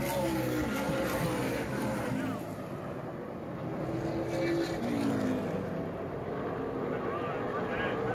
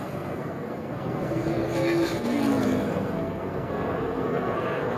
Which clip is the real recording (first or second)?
first